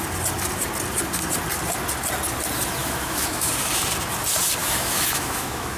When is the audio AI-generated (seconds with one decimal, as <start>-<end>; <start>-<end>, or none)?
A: 2.8-3.5; 4.6-5.8